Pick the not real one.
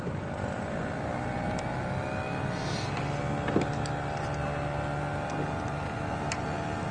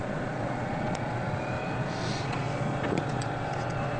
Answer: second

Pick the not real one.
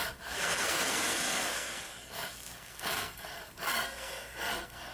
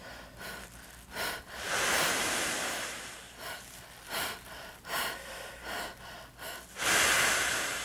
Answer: first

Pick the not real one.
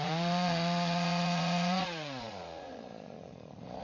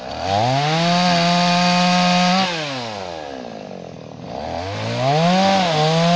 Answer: first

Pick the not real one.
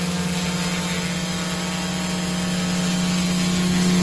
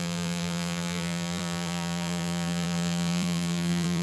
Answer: second